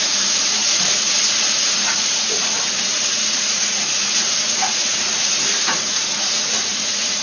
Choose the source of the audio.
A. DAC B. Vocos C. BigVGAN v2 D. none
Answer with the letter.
B